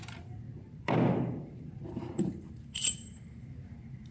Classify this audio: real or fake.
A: fake